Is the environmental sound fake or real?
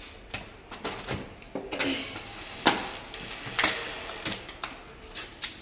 real